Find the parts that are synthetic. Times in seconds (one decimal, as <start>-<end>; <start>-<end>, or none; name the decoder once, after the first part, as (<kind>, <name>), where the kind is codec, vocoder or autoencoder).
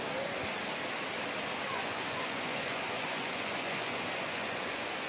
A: 1.7-5.1 (vocoder, Vocos)